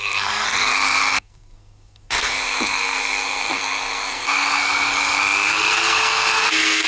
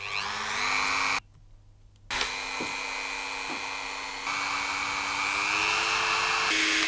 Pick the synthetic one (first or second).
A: first